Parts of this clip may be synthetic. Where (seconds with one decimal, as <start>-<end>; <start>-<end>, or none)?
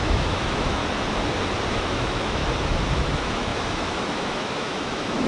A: 0.0-0.8; 1.7-2.4; 3.0-5.3